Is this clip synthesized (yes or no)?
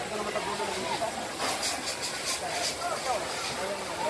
no